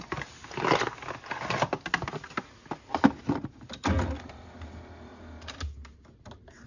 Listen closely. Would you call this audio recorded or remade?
recorded